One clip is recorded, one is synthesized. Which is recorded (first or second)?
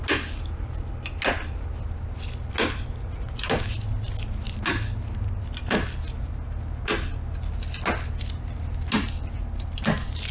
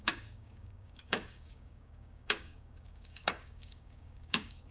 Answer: first